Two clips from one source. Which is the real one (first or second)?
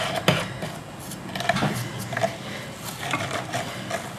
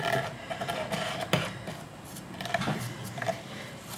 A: first